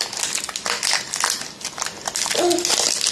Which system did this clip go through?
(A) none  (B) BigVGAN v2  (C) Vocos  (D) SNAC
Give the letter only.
A